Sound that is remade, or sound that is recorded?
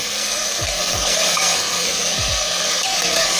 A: remade